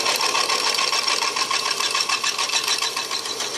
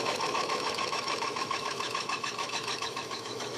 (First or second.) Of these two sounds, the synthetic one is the second